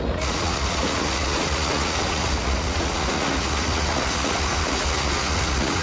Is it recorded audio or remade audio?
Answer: remade